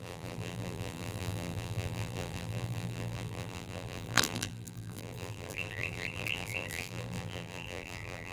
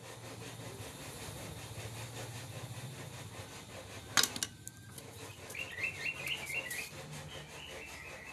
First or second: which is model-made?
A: first